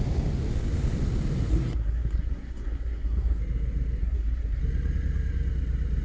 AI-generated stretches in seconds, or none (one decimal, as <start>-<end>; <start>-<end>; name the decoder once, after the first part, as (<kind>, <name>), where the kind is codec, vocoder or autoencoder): 1.5-3.4 (codec, SNAC); 4.0-4.6